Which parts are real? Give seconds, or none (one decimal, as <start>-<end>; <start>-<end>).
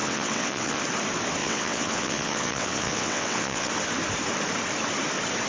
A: 0.8-1.4; 3.7-5.5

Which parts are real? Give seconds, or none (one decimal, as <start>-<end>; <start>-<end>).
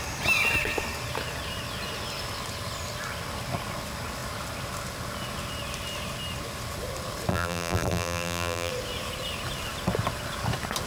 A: 0.0-7.3; 8.7-10.9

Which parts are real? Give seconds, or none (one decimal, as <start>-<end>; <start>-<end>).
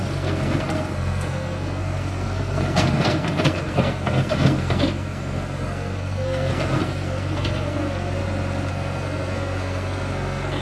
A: 8.2-8.7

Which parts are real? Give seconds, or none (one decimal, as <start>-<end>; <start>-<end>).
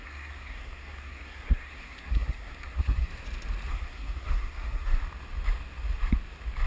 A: 3.1-3.7; 5.0-6.7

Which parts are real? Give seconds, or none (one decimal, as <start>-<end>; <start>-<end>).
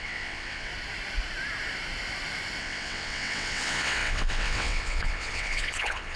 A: 0.7-2.6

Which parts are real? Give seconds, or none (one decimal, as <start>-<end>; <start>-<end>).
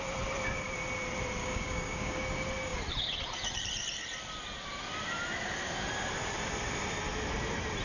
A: 0.0-1.4; 2.2-7.8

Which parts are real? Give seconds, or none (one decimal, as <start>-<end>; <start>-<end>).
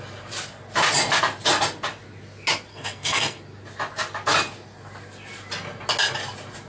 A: 0.0-2.7; 3.4-6.7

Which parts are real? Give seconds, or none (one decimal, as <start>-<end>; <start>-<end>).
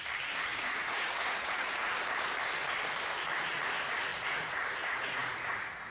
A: 0.0-0.5; 1.9-4.1